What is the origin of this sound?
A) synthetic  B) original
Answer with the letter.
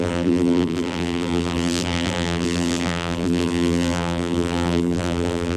A